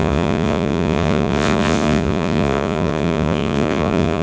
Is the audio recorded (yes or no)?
no